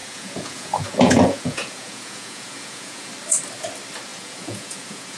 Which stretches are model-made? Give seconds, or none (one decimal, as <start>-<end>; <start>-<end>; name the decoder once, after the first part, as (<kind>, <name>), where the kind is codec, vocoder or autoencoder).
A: 0.0-3.1 (vocoder, Vocos); 4.1-5.2

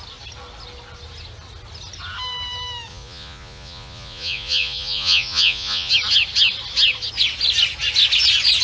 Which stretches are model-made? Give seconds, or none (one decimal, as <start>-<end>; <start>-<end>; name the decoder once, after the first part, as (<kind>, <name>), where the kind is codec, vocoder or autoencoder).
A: 2.9-5.9 (vocoder, Vocos)

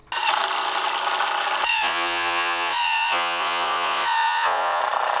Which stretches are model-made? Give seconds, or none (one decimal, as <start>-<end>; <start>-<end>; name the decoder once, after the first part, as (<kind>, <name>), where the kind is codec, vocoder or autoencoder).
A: 1.7-4.8 (vocoder, Vocos)

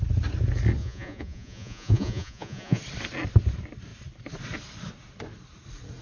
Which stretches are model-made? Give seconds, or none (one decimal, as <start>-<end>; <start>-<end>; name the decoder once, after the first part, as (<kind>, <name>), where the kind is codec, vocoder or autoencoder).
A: 0.8-2.8 (vocoder, Vocos)

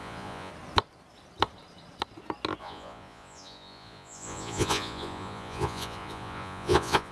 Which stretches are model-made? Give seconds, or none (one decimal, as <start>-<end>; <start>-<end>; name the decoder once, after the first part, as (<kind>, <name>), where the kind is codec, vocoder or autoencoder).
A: 0.0-0.5 (vocoder, Vocos); 2.6-7.1

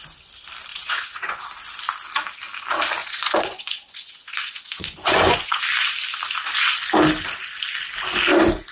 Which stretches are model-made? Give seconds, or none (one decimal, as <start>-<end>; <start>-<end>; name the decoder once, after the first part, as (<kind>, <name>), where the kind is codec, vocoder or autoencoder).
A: 0.7-1.4 (vocoder, Vocos); 3.0-5.6

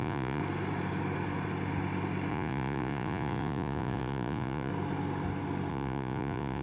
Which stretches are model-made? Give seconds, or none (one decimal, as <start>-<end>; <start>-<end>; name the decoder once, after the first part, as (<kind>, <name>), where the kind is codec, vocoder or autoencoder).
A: 0.0-0.4 (vocoder, Vocos); 2.3-4.7; 5.7-6.6

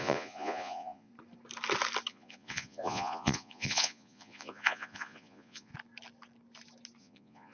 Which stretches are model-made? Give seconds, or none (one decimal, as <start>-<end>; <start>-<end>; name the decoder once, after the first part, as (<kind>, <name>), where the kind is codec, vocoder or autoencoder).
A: 0.0-1.1 (vocoder, Vocos); 2.1-5.7; 7.0-7.5